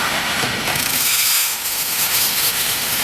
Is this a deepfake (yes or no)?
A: yes